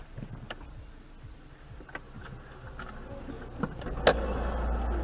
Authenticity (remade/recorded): recorded